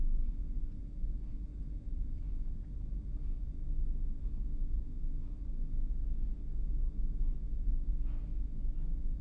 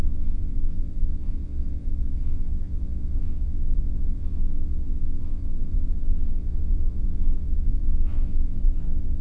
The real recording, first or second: first